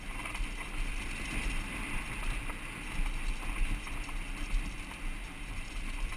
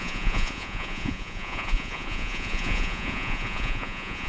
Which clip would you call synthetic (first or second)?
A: second